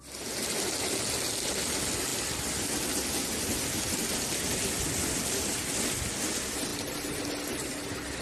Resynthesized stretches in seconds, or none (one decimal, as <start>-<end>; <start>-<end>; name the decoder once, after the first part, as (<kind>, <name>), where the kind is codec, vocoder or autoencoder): none